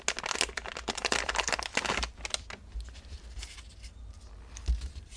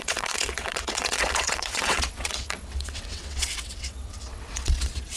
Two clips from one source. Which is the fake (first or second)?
second